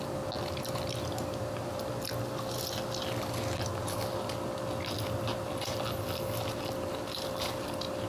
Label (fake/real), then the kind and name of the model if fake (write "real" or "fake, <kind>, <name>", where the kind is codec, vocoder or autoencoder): real